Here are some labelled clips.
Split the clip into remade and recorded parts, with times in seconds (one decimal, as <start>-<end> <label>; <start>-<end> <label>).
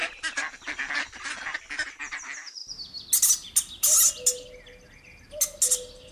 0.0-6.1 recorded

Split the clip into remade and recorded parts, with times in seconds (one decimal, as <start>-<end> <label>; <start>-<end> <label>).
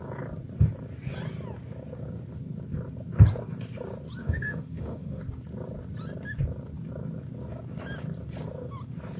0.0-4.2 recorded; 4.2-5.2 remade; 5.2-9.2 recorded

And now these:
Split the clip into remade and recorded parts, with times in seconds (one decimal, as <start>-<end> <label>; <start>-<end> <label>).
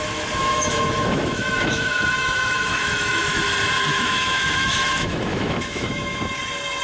0.0-0.4 recorded; 0.4-3.4 remade; 3.4-3.9 recorded; 3.9-6.2 remade; 6.2-6.8 recorded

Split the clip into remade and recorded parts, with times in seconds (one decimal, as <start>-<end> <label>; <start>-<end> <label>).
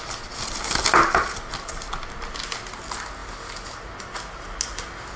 0.0-5.2 recorded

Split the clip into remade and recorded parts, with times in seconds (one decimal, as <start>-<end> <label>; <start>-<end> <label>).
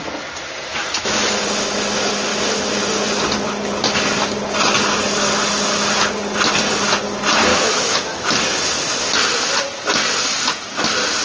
0.0-0.7 recorded; 0.7-1.4 remade; 1.4-7.5 recorded; 7.5-8.3 remade; 8.3-11.2 recorded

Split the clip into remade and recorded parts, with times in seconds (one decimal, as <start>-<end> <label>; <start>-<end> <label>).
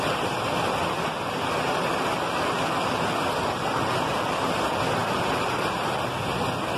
0.0-6.8 recorded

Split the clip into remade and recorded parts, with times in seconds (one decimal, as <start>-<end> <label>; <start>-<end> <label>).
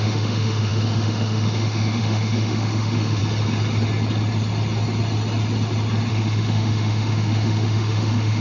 0.0-3.2 remade; 3.2-6.1 recorded; 6.1-8.4 remade